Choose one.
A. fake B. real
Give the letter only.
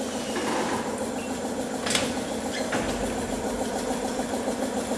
B